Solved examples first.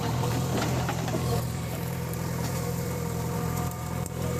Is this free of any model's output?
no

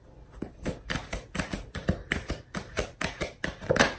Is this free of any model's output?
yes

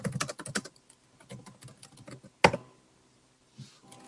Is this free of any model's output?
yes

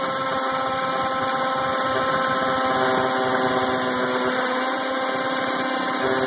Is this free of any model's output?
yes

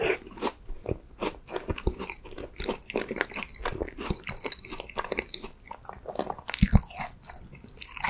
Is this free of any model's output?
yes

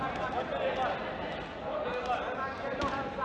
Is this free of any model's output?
yes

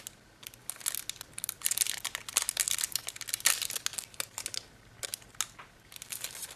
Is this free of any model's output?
yes